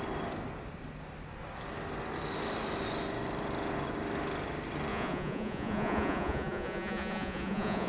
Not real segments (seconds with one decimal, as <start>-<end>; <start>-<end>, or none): 4.9-7.9